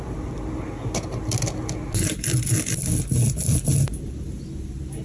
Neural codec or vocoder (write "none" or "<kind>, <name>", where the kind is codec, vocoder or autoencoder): none